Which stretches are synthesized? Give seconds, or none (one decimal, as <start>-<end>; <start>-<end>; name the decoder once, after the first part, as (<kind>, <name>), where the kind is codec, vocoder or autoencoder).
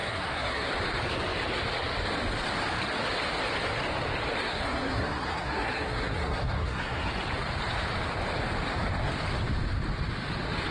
0.0-0.7 (codec, SNAC); 4.4-7.1